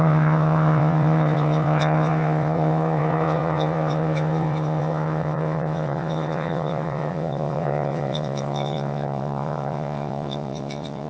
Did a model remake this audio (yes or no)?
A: yes